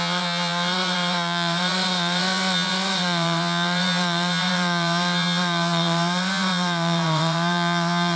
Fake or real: fake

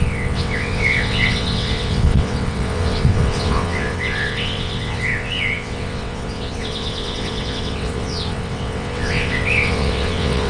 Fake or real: fake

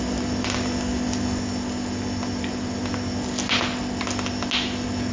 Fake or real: real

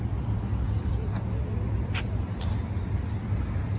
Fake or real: real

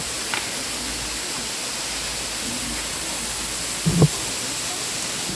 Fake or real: real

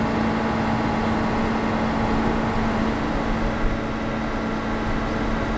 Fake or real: real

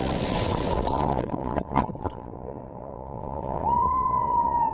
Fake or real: fake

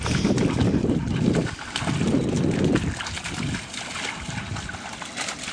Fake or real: real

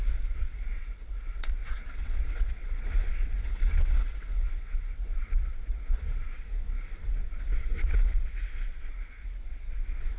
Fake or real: fake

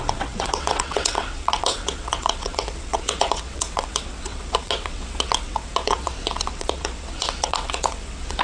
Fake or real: fake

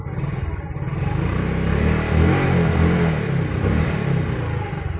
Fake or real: real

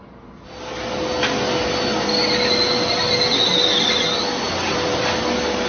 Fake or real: real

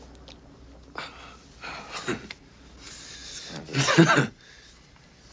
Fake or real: real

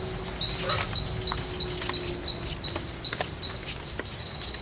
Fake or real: real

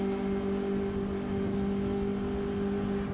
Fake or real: real